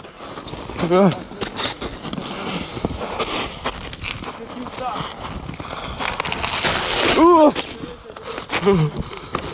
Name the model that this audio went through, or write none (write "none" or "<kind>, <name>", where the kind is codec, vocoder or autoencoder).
none